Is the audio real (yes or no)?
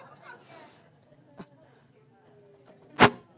yes